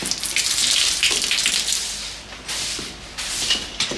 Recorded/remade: recorded